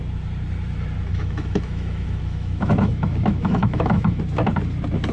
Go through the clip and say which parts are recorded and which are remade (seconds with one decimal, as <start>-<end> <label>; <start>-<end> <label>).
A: 0.0-1.1 recorded; 1.1-4.2 remade; 4.2-5.1 recorded